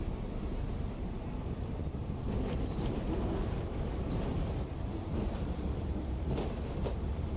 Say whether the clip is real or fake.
fake